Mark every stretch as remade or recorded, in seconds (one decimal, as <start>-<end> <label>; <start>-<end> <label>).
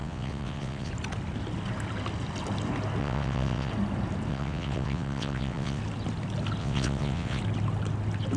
0.0-0.9 remade; 0.9-3.0 recorded; 3.0-3.7 remade; 3.7-4.3 recorded; 4.3-5.8 remade; 5.8-6.6 recorded; 6.6-7.4 remade; 7.4-8.4 recorded